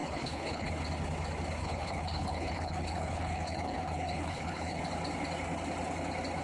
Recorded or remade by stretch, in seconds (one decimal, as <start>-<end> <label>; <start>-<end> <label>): 0.0-0.7 remade; 0.7-1.6 recorded; 1.6-4.8 remade; 4.8-6.4 recorded